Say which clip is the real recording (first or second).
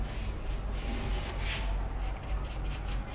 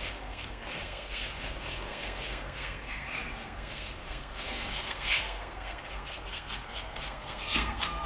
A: first